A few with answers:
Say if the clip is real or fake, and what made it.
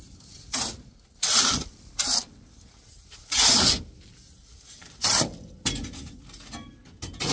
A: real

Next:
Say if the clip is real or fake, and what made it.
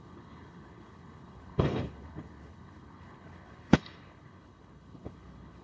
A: fake, codec, HILCodec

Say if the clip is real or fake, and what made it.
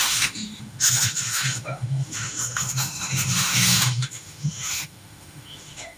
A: fake, autoencoder, DAC-VAE